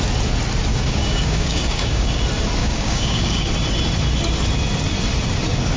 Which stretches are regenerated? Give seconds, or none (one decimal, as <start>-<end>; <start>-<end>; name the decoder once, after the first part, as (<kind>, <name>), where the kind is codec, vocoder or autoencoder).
0.7-2.2 (codec, DAC); 2.6-3.5